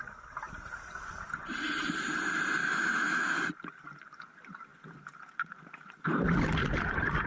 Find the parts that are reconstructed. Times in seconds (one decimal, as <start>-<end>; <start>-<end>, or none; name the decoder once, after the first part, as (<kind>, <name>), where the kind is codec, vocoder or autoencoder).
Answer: 2.6-3.4 (autoencoder, DAC-VAE)